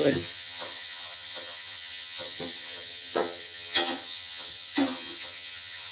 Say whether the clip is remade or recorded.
remade